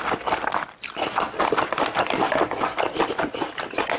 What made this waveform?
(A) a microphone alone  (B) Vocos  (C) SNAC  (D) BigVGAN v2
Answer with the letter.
A